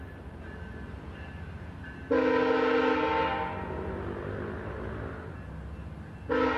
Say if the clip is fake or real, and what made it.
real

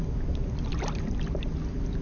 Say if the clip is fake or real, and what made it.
real